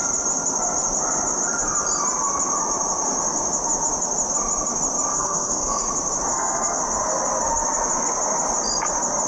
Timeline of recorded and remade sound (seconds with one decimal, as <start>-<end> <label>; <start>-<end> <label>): 0.0-5.1 recorded; 5.1-5.8 remade; 5.8-6.3 recorded; 6.3-6.8 remade; 6.8-9.3 recorded